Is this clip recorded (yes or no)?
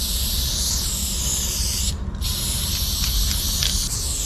yes